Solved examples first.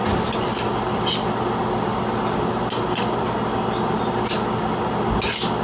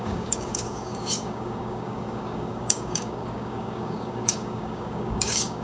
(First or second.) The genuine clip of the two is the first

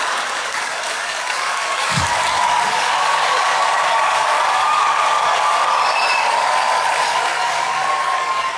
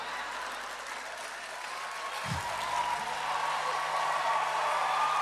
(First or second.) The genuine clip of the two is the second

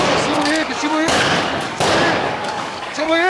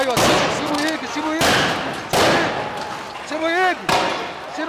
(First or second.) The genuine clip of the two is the second